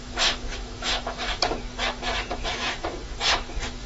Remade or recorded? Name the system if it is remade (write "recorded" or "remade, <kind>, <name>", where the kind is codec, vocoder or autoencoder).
remade, autoencoder, DAC-VAE